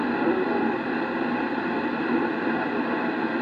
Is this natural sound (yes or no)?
yes